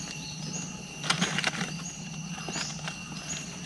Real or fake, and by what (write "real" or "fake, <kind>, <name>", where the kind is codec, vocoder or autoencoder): real